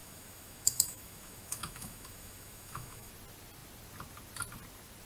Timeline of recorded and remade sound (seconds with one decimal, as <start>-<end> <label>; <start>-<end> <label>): 0.0-3.1 remade; 3.1-5.1 recorded